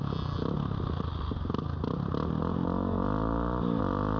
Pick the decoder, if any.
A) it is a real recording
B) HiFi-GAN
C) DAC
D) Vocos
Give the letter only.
A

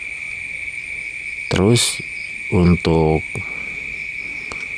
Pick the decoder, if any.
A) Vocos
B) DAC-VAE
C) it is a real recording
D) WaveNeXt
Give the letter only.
C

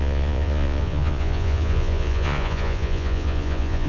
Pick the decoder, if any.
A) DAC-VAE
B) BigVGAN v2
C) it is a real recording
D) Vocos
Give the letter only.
D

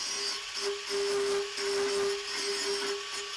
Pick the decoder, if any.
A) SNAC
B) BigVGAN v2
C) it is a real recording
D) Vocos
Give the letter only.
C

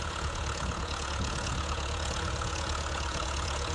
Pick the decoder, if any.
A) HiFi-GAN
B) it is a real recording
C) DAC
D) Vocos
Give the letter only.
D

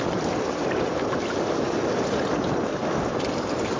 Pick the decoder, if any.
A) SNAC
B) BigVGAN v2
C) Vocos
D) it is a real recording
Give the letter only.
D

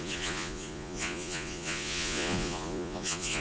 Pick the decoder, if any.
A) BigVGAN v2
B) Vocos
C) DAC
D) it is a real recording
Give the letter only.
B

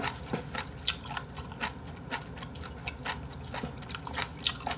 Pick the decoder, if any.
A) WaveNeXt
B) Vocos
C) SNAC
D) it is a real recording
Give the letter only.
D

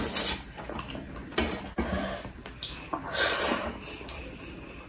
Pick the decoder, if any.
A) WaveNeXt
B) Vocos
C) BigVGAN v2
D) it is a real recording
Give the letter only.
D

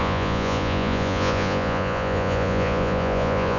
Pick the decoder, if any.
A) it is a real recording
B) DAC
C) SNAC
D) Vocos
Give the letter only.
D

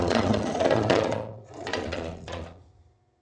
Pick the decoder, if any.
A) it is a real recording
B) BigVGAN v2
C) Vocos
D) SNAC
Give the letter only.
C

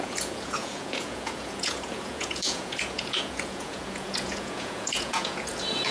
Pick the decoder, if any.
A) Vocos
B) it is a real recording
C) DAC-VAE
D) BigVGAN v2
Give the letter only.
A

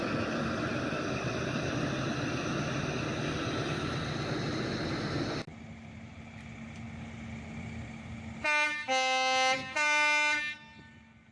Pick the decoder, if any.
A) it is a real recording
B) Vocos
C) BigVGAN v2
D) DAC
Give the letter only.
A